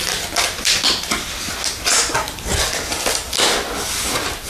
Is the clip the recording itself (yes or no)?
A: yes